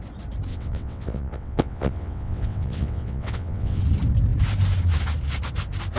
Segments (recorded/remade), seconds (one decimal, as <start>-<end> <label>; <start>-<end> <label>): 0.0-0.5 recorded; 0.5-3.8 remade; 3.8-6.0 recorded